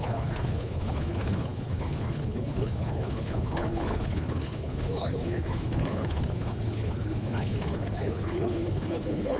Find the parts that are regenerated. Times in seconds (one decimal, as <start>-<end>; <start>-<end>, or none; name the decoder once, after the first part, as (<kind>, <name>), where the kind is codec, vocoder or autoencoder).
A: 0.0-9.4 (codec, HILCodec)